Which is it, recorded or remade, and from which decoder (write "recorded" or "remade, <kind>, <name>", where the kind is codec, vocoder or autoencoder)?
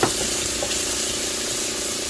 recorded